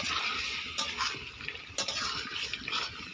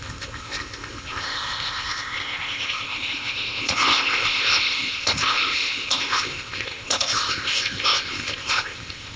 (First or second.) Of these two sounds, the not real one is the second